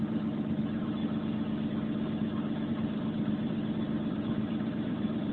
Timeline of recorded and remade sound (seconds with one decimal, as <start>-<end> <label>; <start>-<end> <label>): 0.0-1.0 remade; 1.0-2.7 recorded; 2.7-5.3 remade